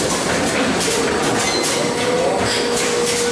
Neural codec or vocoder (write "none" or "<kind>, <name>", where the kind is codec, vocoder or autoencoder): none